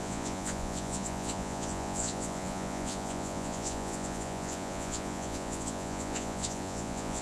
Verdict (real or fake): fake